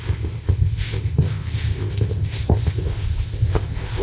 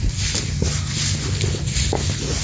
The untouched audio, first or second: second